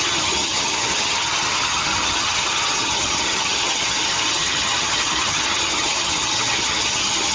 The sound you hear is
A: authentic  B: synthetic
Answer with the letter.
B